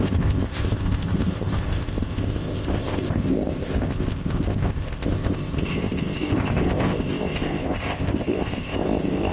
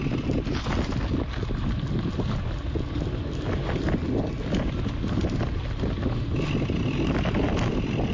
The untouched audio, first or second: second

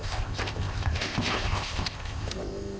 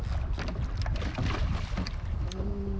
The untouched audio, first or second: second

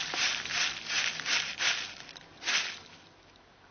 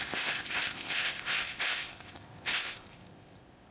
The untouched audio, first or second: first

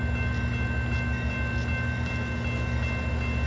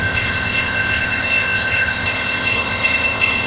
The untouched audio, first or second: first